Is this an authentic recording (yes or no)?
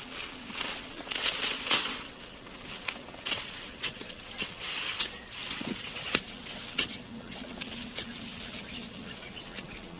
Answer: no